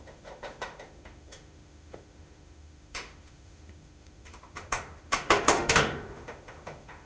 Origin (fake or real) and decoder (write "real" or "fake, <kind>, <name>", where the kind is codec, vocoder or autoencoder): fake, autoencoder, DAC-VAE